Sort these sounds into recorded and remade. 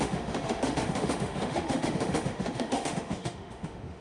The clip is remade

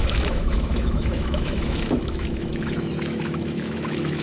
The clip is remade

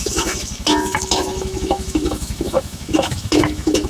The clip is remade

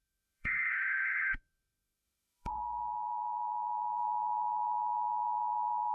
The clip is remade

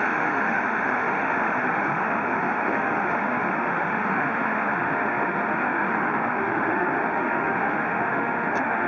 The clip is remade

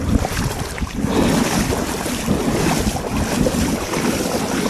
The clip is recorded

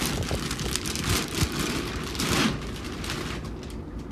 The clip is recorded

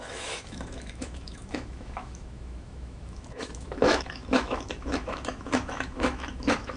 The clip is remade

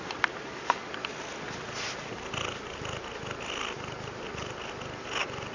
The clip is recorded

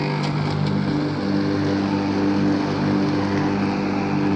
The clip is recorded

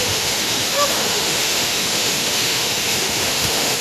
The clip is remade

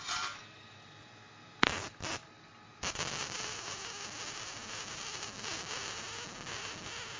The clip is recorded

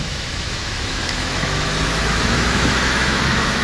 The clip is remade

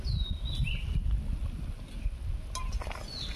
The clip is recorded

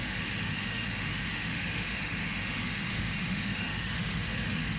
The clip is remade